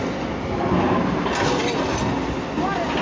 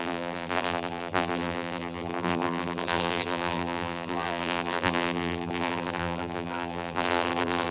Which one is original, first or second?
first